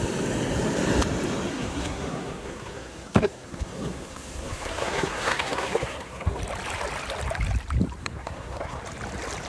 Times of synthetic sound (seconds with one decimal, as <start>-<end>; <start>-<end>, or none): 1.5-6.4; 8.0-8.8